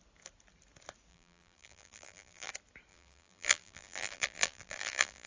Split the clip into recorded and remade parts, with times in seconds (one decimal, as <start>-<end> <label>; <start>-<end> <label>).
0.0-1.1 recorded; 1.1-2.5 remade; 2.5-2.9 recorded; 2.9-5.3 remade